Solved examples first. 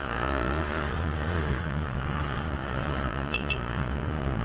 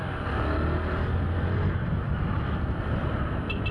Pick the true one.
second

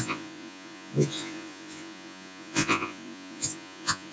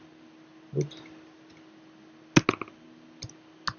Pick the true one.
second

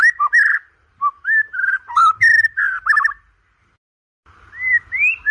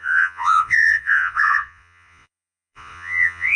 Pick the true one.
first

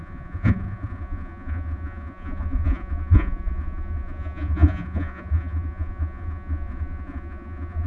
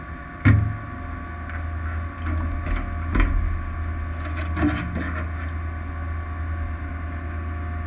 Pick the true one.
second